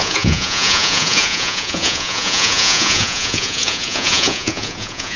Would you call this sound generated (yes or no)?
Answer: yes